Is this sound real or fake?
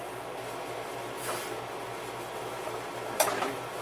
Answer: real